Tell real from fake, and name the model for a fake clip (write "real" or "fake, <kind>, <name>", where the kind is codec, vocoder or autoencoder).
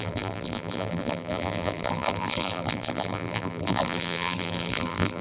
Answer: fake, vocoder, BigVGAN v2